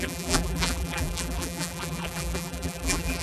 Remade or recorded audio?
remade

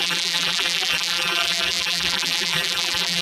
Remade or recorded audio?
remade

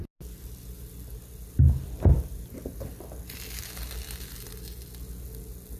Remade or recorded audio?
recorded